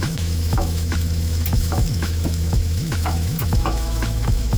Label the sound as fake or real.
fake